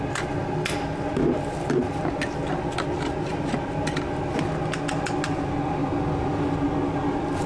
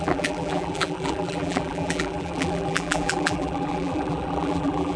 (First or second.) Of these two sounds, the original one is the first